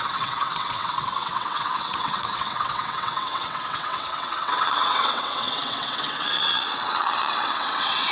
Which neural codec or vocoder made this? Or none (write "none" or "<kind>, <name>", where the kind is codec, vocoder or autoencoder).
vocoder, WaveNeXt